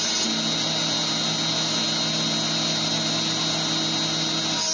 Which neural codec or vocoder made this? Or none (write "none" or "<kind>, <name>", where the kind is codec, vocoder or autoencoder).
none